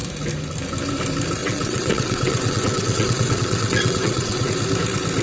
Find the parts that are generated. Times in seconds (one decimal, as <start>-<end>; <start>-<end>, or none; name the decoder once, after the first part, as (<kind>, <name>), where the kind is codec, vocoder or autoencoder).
1.4-4.5 (vocoder, WaveNeXt)